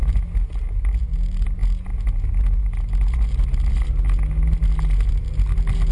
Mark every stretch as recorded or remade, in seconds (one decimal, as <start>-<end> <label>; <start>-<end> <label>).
0.0-5.9 recorded